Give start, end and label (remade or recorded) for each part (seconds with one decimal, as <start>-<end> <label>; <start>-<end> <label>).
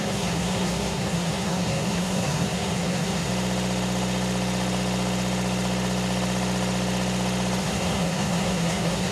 0.0-3.3 remade; 3.3-7.6 recorded; 7.6-9.1 remade